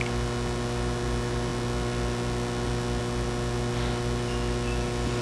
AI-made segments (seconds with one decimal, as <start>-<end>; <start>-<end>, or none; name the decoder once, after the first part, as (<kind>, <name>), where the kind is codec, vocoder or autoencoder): none